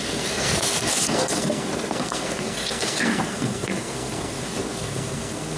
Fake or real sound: fake